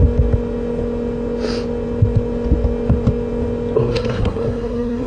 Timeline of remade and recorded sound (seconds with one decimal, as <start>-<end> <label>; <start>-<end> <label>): 0.0-3.9 recorded; 3.9-5.1 remade